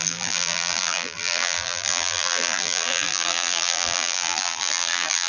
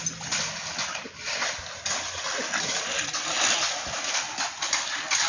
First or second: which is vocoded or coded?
first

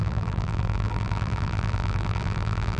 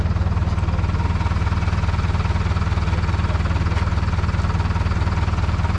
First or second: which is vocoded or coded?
first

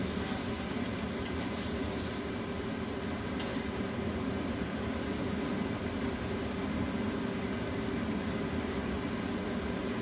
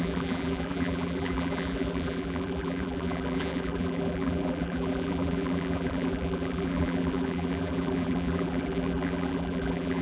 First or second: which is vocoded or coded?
second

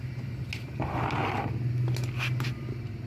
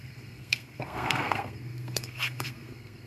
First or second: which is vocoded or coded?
second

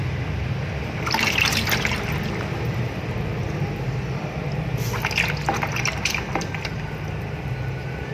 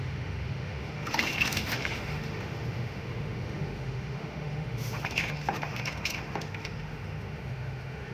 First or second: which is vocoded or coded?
second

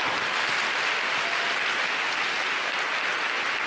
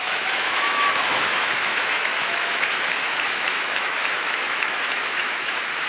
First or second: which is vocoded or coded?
second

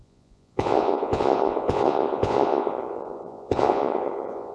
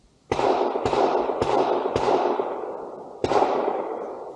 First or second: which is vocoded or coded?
first